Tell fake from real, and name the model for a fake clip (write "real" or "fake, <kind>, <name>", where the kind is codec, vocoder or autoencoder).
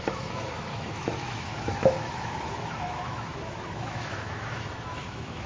fake, autoencoder, DAC-VAE